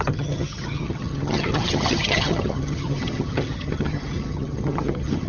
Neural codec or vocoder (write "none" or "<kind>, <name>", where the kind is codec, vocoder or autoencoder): vocoder, HiFi-GAN